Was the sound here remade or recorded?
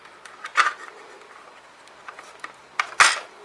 recorded